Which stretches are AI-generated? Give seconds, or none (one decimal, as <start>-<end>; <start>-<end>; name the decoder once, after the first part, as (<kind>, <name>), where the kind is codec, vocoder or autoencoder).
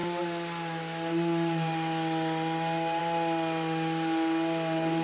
none